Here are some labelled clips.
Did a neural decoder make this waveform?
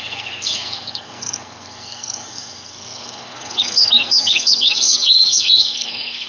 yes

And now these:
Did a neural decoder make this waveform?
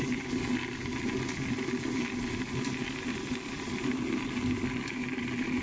no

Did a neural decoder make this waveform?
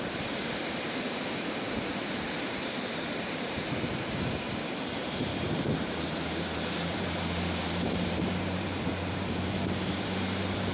yes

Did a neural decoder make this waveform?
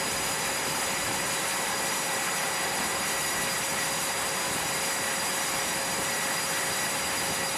no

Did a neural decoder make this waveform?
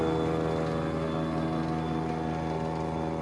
no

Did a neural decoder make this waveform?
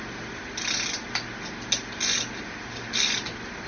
no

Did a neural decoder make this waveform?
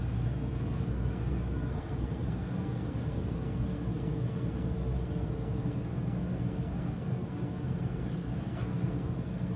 yes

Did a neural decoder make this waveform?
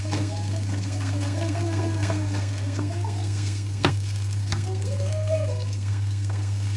yes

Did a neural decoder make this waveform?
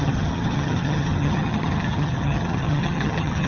yes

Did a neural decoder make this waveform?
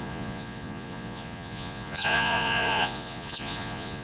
yes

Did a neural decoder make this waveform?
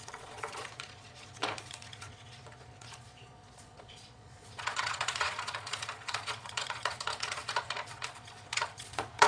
yes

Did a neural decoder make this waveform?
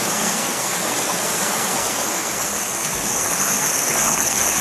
yes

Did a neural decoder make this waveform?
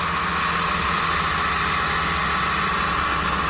no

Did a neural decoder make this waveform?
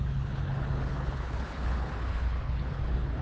yes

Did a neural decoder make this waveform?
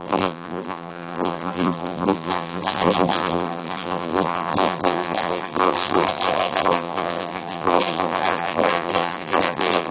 yes